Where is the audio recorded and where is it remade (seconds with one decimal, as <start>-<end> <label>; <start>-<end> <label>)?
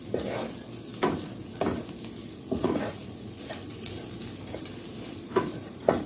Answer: 0.0-2.2 recorded; 2.2-4.0 remade; 4.0-5.3 recorded; 5.3-6.1 remade